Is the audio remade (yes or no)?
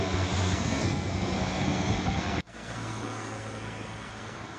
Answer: yes